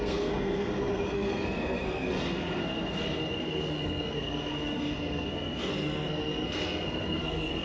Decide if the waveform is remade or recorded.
remade